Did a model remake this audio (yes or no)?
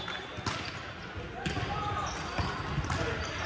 no